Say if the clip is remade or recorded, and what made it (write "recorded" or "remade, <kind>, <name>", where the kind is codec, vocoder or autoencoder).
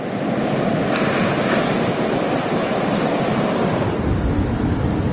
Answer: recorded